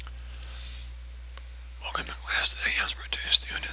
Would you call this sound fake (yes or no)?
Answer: no